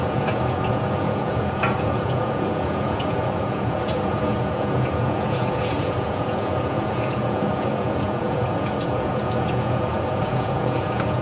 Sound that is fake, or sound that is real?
fake